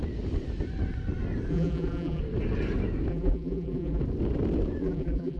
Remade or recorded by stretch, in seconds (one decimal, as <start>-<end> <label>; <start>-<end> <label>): 0.0-1.5 recorded; 1.5-2.2 remade; 2.2-3.1 recorded; 3.1-4.0 remade; 4.0-4.8 recorded; 4.8-5.4 remade